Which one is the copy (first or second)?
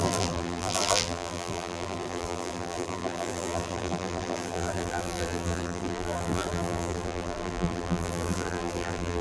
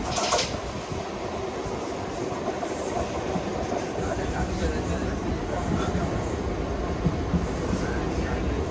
first